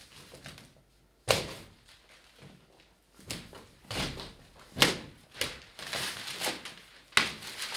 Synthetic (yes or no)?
no